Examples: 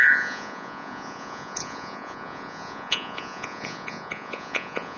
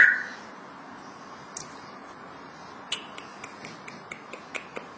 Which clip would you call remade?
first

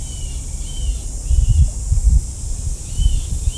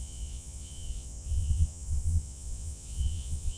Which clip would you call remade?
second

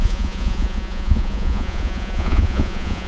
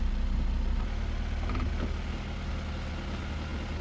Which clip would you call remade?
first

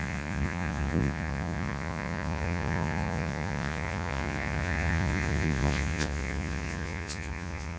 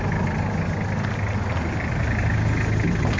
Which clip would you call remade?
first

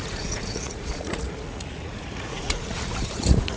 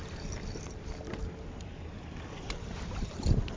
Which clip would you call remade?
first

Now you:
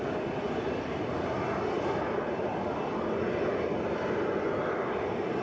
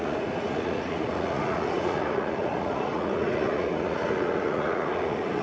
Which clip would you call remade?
second